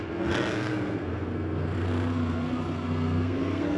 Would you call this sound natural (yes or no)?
no